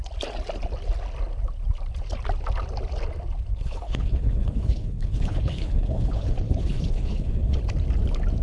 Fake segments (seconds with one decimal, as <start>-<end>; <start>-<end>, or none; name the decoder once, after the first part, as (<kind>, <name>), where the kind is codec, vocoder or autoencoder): 3.5-7.6 (codec, HILCodec)